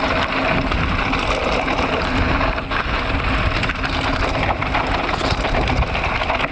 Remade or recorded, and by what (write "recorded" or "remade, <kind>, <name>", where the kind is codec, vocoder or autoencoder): recorded